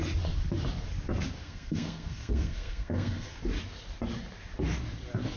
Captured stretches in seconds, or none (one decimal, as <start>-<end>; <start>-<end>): 0.0-1.4; 3.4-5.4